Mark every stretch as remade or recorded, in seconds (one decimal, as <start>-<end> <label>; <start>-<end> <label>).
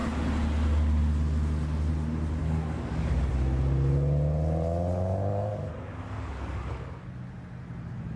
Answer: 0.0-2.4 recorded; 2.4-3.3 remade; 3.3-5.3 recorded; 5.3-7.1 remade; 7.1-8.2 recorded